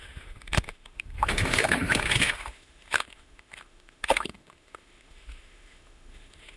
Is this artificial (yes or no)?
yes